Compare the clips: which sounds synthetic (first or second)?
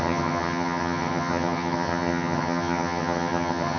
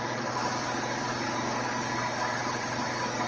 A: first